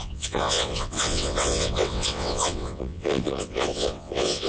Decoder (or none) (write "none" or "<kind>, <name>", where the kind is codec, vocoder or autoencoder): vocoder, WaveNeXt